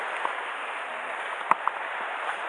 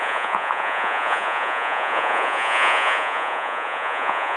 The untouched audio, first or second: first